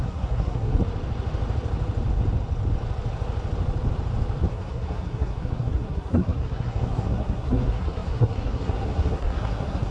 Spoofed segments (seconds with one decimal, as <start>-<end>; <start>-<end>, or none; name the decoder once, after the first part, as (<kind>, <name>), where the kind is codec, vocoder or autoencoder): 0.0-0.8 (codec, SNAC); 4.5-9.9